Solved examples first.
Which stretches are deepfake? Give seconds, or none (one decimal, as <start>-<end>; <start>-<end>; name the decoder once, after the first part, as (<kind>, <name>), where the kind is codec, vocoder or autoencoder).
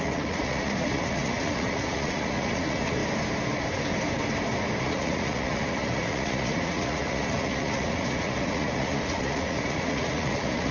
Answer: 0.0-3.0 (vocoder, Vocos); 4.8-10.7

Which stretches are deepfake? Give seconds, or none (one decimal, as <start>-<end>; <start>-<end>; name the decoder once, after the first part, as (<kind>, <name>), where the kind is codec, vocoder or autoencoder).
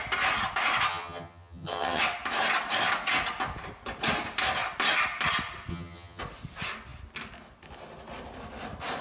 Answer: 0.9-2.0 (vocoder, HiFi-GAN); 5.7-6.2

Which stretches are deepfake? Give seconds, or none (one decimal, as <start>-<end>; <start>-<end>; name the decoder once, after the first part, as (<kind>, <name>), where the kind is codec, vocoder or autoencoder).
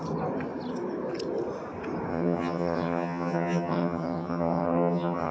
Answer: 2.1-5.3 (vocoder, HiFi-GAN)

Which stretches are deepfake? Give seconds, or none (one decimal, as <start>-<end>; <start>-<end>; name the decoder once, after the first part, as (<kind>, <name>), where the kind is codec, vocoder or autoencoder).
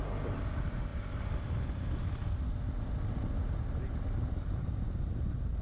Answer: none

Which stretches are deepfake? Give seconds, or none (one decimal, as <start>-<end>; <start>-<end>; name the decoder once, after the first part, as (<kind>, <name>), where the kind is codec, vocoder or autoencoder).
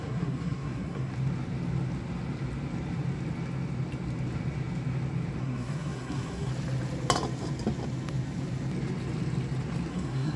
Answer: 0.0-1.1 (codec, SNAC); 5.4-6.5; 9.9-10.4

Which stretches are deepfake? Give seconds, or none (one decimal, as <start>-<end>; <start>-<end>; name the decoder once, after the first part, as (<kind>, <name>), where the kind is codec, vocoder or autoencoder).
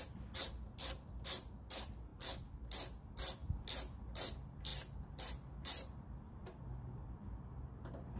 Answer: 0.0-2.1 (vocoder, BigVGAN v2); 3.0-3.4; 4.0-8.2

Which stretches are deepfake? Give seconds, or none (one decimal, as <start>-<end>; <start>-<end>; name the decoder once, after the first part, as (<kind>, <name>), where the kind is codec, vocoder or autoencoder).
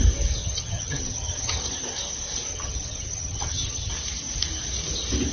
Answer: 0.4-1.6 (vocoder, HiFi-GAN); 2.5-3.9